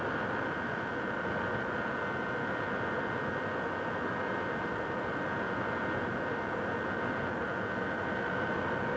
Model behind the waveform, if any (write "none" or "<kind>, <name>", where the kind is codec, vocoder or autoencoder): none